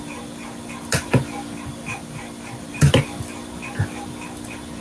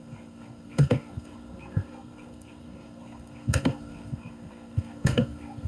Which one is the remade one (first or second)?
second